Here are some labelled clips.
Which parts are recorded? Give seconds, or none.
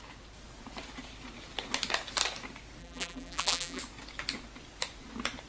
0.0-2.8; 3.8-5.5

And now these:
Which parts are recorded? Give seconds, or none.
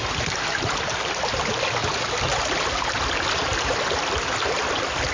0.0-0.9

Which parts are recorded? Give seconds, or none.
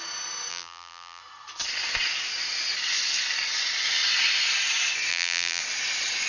0.0-0.5; 1.2-5.1; 5.6-6.3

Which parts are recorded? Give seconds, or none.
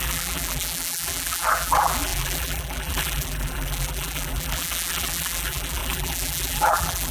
none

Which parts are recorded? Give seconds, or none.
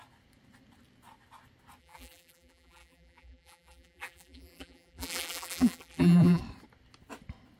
0.0-1.8; 6.4-7.6